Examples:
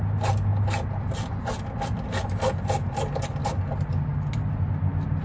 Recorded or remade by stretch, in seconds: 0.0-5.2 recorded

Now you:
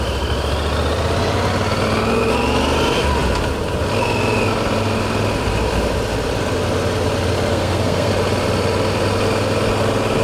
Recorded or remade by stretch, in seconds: 0.0-7.5 recorded; 7.5-8.1 remade; 8.1-10.2 recorded

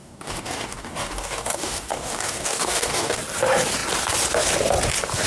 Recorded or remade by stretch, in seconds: 0.0-3.2 remade; 3.2-5.3 recorded